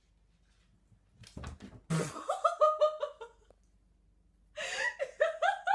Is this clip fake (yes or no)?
no